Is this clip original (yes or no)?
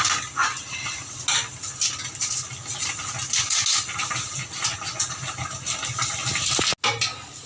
yes